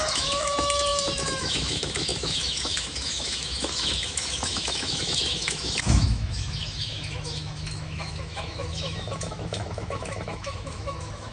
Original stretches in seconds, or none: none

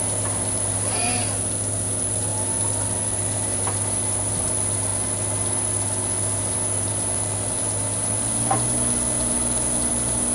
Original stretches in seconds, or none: 0.0-10.3

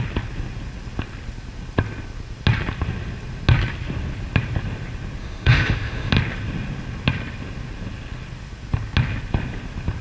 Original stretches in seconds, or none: 0.0-5.2; 6.1-10.0